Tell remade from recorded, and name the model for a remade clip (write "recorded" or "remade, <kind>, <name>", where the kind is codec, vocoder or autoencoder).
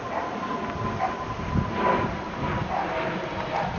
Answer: recorded